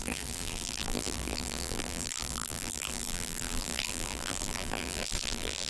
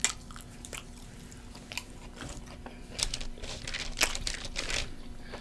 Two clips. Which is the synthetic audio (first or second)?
first